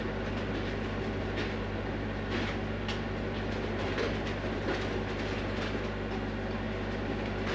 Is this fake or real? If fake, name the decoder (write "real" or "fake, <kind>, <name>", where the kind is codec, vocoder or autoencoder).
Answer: real